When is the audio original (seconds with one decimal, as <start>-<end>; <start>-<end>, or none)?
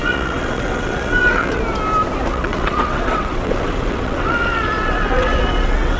1.6-2.3